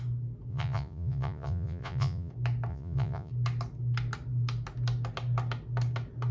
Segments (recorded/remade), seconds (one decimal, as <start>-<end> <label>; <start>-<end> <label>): 0.0-0.5 recorded; 0.5-2.3 remade; 2.3-2.7 recorded; 2.7-3.3 remade; 3.3-6.3 recorded